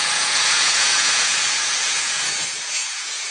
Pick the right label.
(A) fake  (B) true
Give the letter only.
A